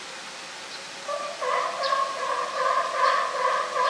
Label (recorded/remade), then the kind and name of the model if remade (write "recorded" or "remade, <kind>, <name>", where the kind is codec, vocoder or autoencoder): recorded